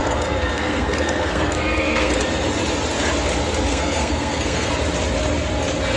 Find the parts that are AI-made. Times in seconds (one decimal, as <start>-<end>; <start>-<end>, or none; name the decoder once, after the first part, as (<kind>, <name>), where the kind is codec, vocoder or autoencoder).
0.0-2.1 (codec, SNAC); 3.7-4.7